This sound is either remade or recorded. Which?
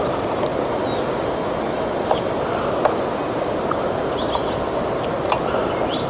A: recorded